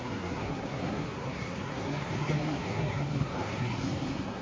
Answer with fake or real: fake